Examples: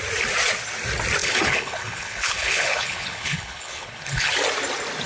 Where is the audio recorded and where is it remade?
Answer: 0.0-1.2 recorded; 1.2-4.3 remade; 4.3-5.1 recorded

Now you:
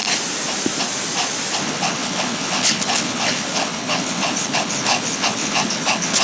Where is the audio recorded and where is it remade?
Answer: 0.0-1.6 recorded; 1.6-6.2 remade

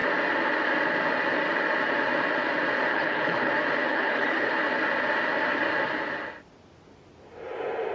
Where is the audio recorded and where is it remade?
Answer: 0.0-2.9 recorded; 2.9-3.5 remade; 3.5-3.9 recorded; 3.9-4.5 remade; 4.5-7.9 recorded

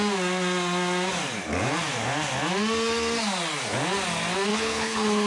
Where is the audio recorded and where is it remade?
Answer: 0.0-4.5 recorded; 4.5-5.3 remade

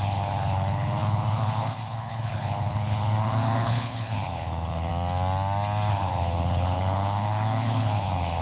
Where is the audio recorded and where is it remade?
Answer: 0.0-4.9 remade; 4.9-5.9 recorded; 5.9-8.4 remade

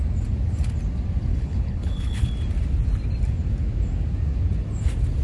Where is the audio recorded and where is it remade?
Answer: 0.0-1.3 recorded; 1.3-2.3 remade; 2.3-5.2 recorded